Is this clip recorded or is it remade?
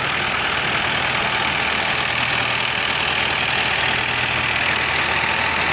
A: recorded